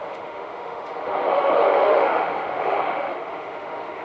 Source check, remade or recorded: remade